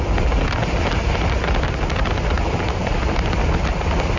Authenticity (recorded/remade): recorded